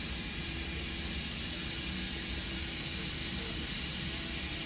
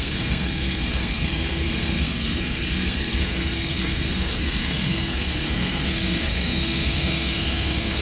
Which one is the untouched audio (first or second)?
first